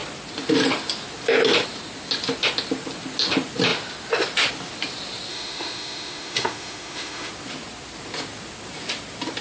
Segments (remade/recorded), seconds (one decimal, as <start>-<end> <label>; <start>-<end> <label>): 0.0-5.3 recorded; 5.3-7.3 remade; 7.3-9.4 recorded